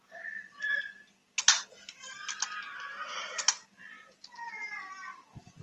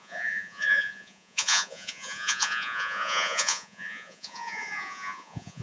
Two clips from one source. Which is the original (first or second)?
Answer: first